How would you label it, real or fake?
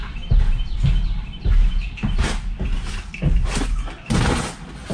real